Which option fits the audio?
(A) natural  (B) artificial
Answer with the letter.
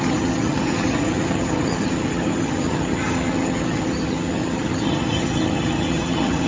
B